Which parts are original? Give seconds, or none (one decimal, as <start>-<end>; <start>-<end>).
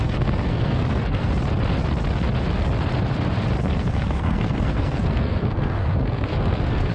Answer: 1.3-3.6